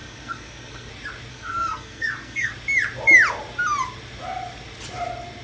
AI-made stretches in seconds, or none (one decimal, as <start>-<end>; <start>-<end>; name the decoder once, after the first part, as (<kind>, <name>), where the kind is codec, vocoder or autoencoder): 0.0-0.9 (codec, SNAC); 1.3-2.5